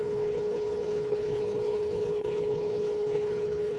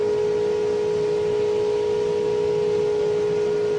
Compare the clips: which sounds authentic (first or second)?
second